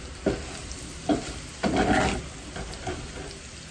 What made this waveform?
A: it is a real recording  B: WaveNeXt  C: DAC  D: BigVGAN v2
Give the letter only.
A